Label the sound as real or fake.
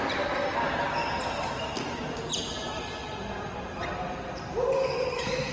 real